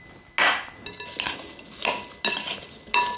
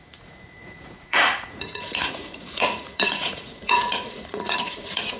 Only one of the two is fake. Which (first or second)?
second